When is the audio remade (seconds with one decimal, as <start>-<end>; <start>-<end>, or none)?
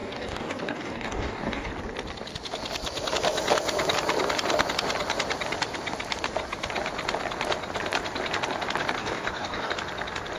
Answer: 0.0-1.7; 9.0-9.7